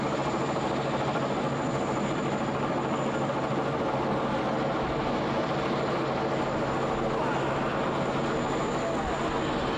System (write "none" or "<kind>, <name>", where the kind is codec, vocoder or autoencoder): none